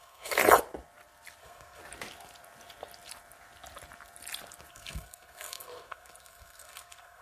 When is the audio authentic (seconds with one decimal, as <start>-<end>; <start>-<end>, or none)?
0.4-1.4; 1.8-4.7